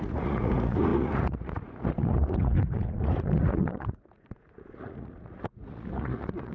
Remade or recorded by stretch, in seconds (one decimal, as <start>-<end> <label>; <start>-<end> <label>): 0.0-6.5 remade